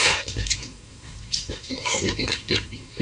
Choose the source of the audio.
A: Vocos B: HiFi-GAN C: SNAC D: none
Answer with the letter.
C